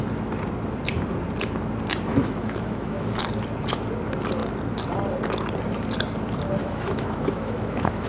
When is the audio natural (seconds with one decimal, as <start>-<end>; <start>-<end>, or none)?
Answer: 0.0-2.1; 3.2-6.6

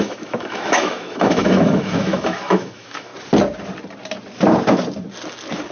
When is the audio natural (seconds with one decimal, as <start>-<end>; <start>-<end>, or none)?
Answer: 3.1-5.7

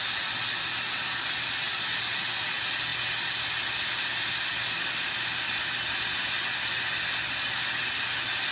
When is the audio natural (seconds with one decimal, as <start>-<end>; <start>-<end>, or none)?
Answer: 0.0-8.5

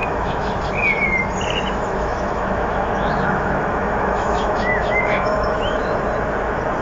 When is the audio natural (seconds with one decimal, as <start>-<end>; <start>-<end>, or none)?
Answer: 0.6-1.7; 5.8-6.8

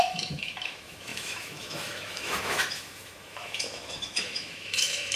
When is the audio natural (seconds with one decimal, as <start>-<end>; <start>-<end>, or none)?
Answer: none

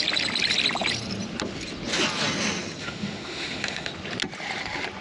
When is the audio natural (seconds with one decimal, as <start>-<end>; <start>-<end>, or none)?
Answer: 0.0-2.8; 3.9-5.0

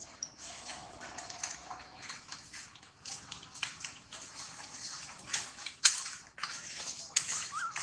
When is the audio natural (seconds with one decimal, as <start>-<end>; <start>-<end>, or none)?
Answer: none